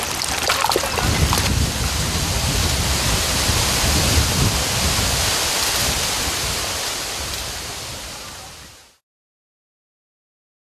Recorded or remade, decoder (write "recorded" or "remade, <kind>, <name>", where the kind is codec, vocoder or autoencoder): recorded